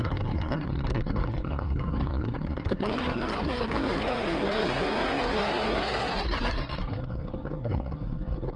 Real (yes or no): no